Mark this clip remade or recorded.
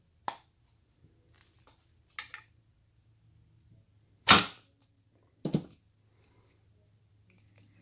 recorded